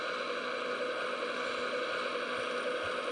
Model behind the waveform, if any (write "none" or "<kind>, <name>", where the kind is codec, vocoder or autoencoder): none